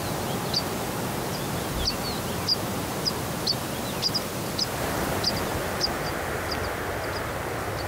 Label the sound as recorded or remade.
recorded